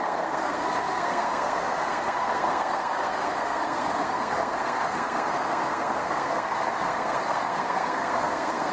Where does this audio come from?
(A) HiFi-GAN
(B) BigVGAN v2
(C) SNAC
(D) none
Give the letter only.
C